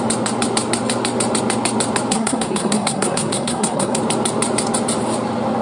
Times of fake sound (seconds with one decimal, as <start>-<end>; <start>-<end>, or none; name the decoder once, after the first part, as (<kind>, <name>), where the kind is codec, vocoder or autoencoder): 2.1-4.0 (codec, SNAC)